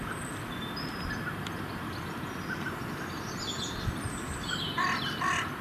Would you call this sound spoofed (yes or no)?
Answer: no